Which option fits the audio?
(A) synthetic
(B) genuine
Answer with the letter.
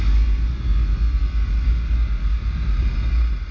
B